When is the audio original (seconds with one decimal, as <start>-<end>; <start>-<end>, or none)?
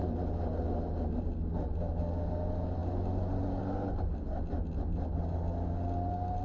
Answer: 0.0-6.4